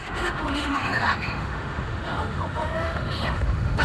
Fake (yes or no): yes